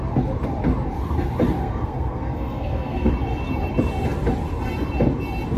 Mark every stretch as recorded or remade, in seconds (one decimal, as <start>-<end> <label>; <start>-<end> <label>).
0.0-1.6 recorded; 1.6-3.1 remade; 3.1-5.6 recorded